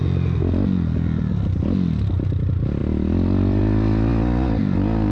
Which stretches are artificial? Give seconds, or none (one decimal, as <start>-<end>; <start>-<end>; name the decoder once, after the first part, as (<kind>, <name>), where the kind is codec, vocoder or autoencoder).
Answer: none

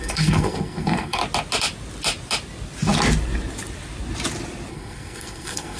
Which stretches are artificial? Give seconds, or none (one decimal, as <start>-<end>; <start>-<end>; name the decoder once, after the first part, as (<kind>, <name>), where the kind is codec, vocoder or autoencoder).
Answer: 0.0-1.2 (codec, SNAC); 4.7-5.8

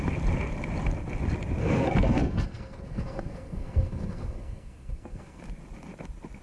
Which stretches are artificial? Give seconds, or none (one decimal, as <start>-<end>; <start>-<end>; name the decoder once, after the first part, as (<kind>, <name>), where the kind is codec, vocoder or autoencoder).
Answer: 1.6-5.4 (codec, SNAC)

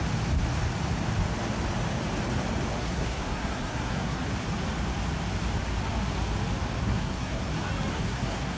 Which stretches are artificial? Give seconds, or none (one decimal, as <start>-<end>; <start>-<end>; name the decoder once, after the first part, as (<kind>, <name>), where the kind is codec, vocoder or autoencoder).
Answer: 2.8-4.2 (codec, SNAC); 6.8-7.5; 7.9-8.6

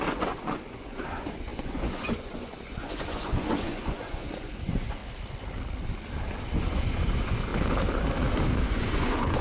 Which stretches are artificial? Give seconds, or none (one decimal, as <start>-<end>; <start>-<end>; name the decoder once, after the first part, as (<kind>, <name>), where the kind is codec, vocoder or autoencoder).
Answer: 0.0-5.0 (vocoder, Vocos); 6.5-7.5; 8.7-9.4